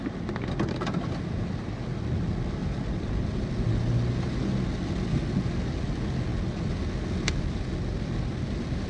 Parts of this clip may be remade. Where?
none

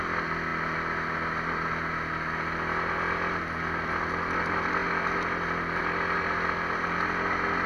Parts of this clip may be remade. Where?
none

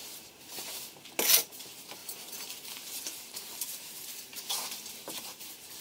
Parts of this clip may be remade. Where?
0.0-1.1 (vocoder, BigVGAN v2); 2.0-5.8